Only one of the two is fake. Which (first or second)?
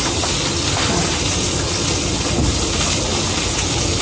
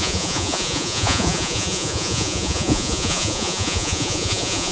second